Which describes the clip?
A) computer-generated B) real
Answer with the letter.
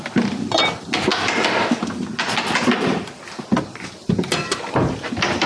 B